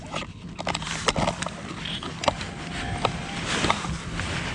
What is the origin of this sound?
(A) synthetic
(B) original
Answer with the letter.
B